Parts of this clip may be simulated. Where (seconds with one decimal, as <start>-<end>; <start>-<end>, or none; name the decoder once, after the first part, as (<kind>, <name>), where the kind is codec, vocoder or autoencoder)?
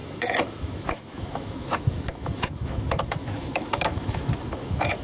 0.0-5.0 (autoencoder, DAC-VAE)